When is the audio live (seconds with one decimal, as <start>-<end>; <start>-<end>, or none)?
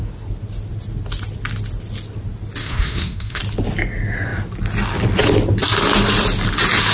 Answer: 0.0-2.6; 3.4-6.9